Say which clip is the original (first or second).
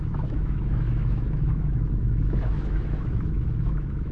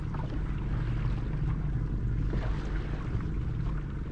second